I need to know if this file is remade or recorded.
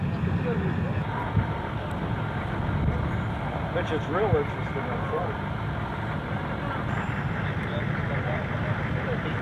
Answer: recorded